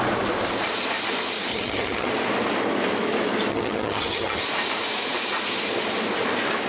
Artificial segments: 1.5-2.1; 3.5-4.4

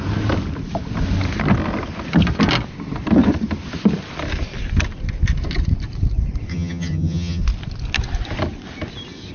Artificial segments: 6.5-7.4

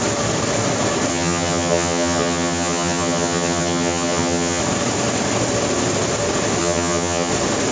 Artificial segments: 1.1-4.6; 6.6-7.3